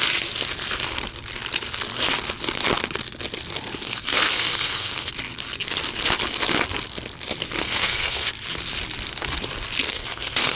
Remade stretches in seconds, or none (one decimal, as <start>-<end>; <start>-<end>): 3.9-5.1; 7.6-8.3; 9.9-10.6